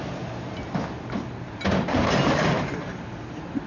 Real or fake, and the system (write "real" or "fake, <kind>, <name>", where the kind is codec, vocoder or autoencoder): real